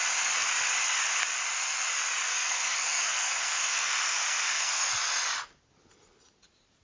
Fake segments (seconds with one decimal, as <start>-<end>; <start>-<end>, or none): 2.3-4.9